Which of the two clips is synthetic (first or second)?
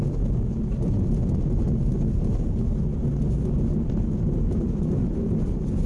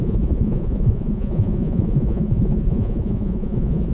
second